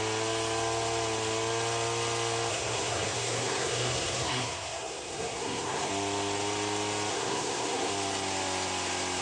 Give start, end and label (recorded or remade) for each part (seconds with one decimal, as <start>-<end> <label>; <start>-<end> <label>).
0.0-2.5 recorded; 2.5-5.9 remade; 5.9-7.1 recorded; 7.1-7.9 remade; 7.9-9.2 recorded